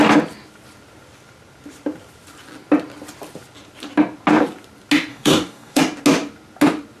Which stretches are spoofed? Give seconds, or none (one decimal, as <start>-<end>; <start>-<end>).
5.1-5.8